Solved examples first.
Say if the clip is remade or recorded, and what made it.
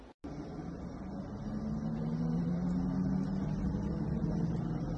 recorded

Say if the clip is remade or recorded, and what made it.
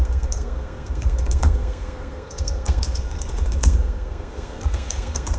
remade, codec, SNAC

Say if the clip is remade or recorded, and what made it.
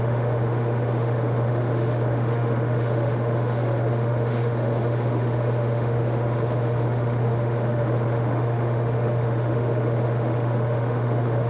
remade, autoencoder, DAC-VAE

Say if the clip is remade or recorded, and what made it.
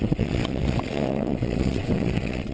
remade, vocoder, WaveNeXt